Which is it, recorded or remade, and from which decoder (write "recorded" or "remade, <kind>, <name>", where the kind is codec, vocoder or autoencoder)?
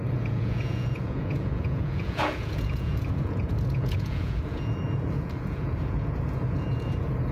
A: remade, vocoder, Vocos